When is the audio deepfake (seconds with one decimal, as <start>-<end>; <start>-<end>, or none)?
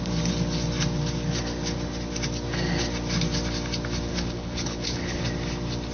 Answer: 4.1-5.2